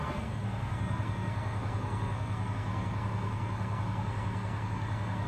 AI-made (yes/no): yes